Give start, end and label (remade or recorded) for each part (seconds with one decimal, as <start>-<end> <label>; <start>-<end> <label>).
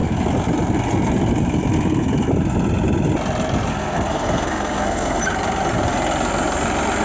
0.0-3.7 recorded; 3.7-5.2 remade; 5.2-7.0 recorded